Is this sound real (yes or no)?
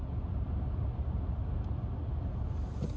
yes